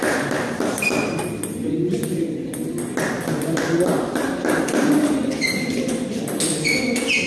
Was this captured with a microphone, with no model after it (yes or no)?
yes